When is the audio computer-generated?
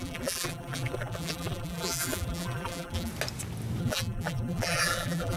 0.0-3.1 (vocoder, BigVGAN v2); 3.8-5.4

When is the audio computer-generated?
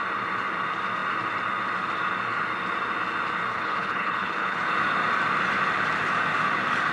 3.5-4.7 (codec, HILCodec)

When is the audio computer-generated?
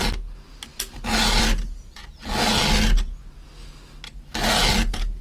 none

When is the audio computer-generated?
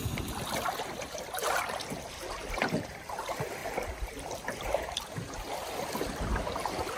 0.0-1.4 (vocoder, BigVGAN v2); 2.4-7.0